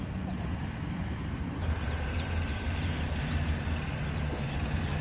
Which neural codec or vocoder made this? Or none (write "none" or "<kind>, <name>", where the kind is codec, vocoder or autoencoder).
vocoder, BigVGAN v2